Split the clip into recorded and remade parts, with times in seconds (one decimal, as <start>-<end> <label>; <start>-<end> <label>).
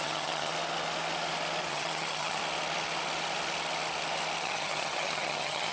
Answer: 0.0-0.5 remade; 0.5-1.7 recorded; 1.7-2.4 remade; 2.4-4.4 recorded; 4.4-5.7 remade